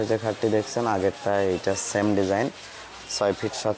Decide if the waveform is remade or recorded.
recorded